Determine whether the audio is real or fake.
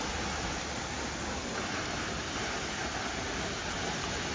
real